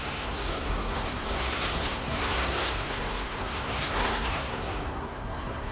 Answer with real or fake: fake